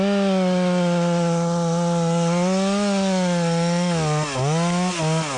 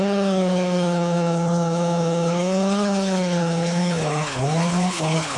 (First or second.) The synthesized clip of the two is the second